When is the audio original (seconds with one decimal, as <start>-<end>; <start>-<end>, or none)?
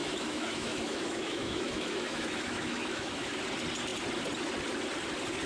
3.3-5.5